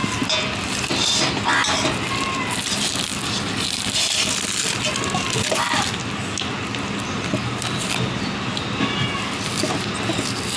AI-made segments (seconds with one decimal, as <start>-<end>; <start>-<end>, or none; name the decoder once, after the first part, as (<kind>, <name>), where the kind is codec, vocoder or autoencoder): none